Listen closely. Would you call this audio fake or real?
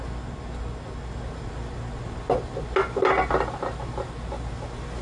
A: real